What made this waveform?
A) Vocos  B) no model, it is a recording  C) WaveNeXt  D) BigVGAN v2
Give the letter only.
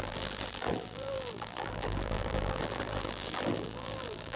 D